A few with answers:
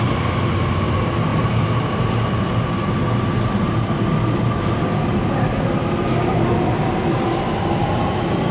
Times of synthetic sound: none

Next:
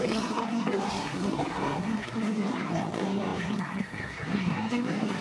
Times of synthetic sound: 0.0-5.2 (codec, SNAC)